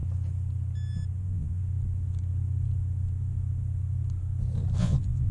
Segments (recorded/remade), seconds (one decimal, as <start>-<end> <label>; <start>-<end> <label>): 0.0-1.2 recorded; 1.2-1.6 remade; 1.6-4.8 recorded; 4.8-5.3 remade